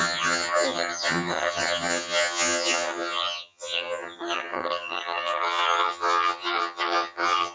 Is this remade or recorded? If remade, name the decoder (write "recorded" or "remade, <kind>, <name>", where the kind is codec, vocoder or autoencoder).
remade, vocoder, HiFi-GAN